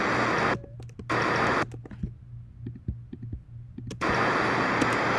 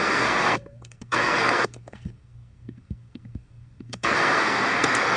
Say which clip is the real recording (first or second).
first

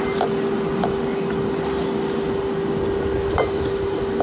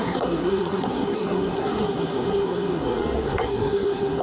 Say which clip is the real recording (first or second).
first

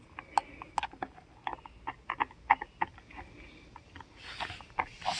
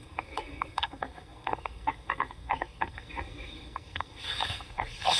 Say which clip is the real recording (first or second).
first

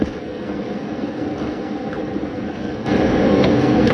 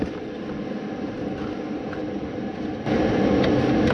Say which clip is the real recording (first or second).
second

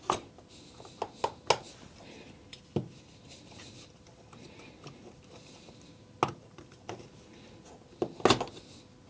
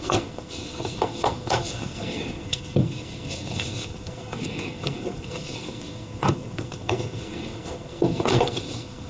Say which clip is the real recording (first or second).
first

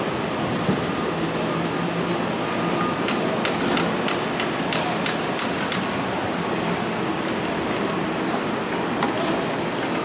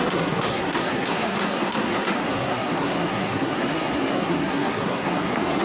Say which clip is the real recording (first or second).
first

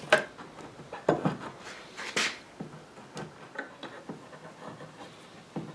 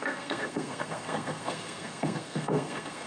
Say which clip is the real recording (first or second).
first